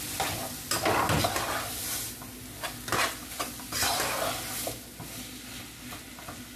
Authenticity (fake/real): real